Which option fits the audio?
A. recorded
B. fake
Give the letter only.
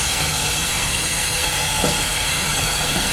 B